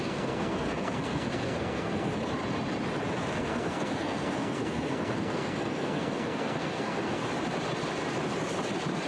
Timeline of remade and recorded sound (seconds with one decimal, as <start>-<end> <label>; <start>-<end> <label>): 0.0-2.1 remade; 2.1-3.3 recorded; 3.3-7.2 remade; 7.2-9.1 recorded